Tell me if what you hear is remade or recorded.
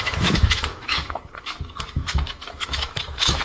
remade